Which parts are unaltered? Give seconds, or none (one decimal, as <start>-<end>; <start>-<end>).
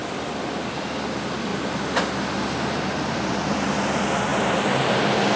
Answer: 0.0-1.5; 3.7-4.3